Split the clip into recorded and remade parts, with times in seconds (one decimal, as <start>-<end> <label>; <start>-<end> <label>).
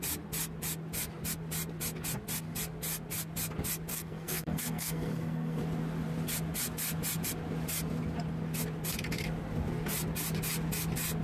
0.0-3.9 recorded; 3.9-5.6 remade; 5.6-11.2 recorded